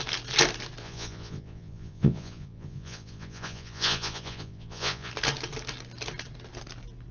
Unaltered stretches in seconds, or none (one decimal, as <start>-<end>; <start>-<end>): 0.0-0.8; 5.1-7.1